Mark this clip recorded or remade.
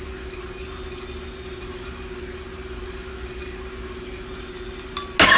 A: recorded